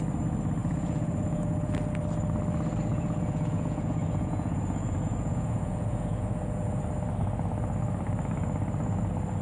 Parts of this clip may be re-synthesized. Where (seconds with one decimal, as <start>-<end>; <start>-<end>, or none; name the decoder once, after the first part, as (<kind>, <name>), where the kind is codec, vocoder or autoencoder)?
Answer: 0.6-1.7 (vocoder, Vocos); 2.9-6.8